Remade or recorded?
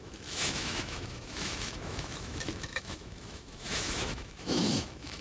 remade